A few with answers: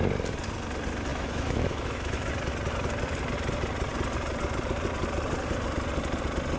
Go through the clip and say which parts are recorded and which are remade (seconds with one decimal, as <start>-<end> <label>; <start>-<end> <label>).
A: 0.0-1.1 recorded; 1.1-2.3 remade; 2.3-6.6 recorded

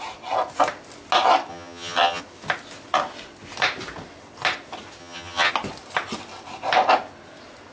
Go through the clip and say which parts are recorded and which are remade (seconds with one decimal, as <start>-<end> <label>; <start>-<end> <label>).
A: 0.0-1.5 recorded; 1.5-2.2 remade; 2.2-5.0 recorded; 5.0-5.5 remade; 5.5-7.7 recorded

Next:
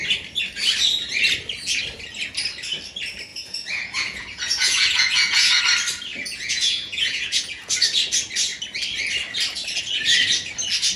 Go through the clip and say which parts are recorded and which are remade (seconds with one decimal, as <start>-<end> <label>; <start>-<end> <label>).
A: 0.0-3.3 recorded; 3.3-5.6 remade; 5.6-6.1 recorded; 6.1-7.7 remade; 7.7-11.0 recorded

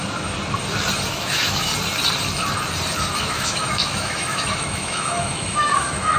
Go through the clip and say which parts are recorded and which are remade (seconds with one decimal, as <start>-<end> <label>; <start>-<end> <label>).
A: 0.0-1.1 recorded; 1.1-1.7 remade; 1.7-3.2 recorded; 3.2-6.2 remade

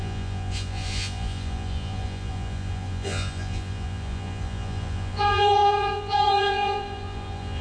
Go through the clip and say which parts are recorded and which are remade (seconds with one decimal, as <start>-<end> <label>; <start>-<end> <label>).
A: 0.0-7.6 remade

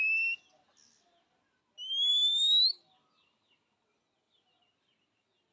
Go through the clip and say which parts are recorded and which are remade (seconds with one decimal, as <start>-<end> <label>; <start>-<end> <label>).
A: 0.0-2.1 recorded; 2.1-2.8 remade; 2.8-5.5 recorded

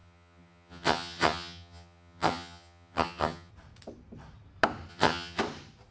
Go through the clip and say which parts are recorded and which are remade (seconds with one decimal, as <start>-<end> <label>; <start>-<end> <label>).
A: 0.0-3.5 remade; 3.5-4.9 recorded; 4.9-5.4 remade; 5.4-5.9 recorded

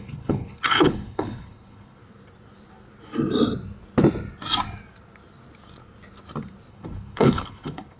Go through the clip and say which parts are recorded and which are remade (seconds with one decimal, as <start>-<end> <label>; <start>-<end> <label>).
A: 0.0-2.0 remade; 2.0-6.7 recorded; 6.7-8.0 remade